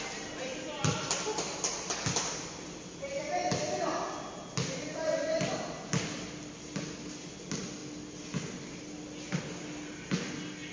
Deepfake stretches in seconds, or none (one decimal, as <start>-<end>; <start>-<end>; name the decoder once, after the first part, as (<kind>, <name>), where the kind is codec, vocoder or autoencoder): none